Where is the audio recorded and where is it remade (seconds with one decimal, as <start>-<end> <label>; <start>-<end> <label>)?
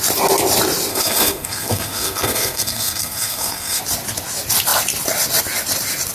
0.0-0.9 recorded; 0.9-3.8 remade; 3.8-6.1 recorded